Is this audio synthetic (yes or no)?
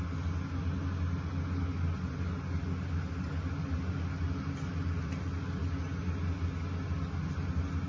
no